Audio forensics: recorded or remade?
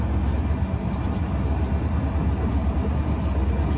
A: recorded